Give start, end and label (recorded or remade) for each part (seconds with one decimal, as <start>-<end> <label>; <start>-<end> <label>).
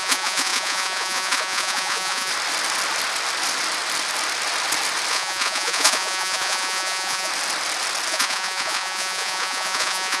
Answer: 0.0-2.3 remade; 2.3-5.1 recorded; 5.1-7.3 remade; 7.3-8.1 recorded; 8.1-10.2 remade